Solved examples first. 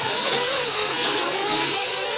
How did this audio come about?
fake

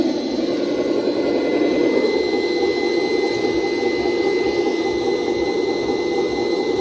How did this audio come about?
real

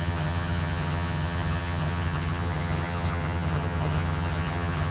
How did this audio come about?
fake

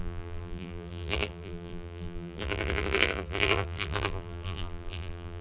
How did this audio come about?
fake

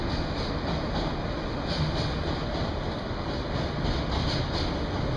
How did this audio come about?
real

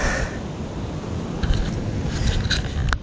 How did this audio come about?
real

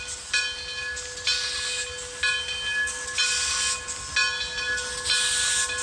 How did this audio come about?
real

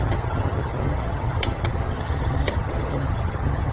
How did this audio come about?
fake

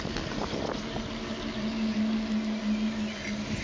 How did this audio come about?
real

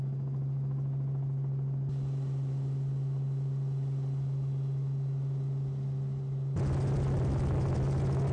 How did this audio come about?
real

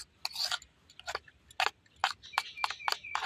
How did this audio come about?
real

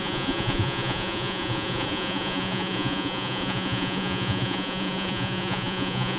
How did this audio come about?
fake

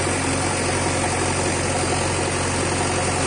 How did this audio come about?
real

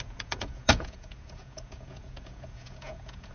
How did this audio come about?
fake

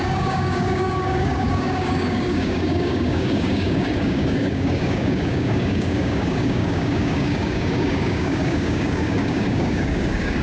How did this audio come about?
fake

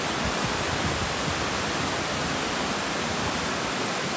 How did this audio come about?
real